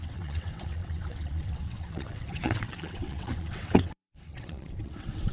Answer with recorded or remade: remade